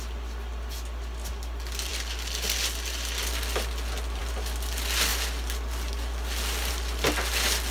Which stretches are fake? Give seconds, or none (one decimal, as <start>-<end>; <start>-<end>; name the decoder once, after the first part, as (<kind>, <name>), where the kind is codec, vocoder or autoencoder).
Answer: none